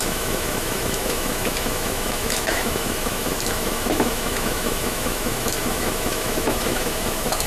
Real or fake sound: fake